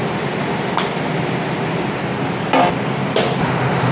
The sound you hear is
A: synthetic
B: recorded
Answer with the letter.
B